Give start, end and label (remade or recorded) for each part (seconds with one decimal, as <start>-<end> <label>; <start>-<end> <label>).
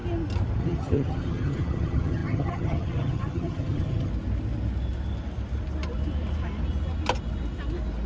0.0-0.6 recorded; 0.6-4.1 remade; 4.1-8.1 recorded